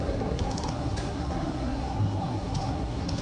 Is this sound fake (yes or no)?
yes